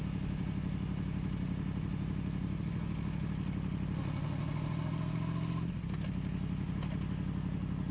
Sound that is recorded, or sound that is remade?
recorded